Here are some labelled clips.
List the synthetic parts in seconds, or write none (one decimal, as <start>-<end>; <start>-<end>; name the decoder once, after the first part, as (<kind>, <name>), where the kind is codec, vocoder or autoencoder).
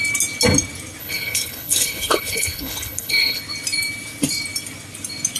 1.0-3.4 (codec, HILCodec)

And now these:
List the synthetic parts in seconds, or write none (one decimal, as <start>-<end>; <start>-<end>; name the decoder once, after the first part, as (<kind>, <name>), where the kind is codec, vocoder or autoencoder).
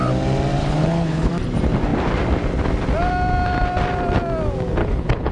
0.6-1.3 (codec, HILCodec); 4.8-5.3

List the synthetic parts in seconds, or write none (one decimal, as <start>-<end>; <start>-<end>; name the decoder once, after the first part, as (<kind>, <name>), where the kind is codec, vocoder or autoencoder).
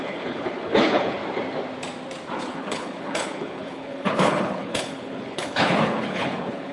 0.0-1.2 (codec, HILCodec); 2.4-6.7